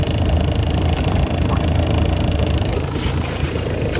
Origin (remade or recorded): remade